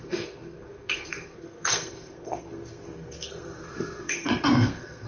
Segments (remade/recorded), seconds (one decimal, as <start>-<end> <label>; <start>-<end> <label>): 0.0-5.1 remade